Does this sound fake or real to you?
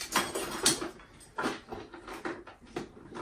real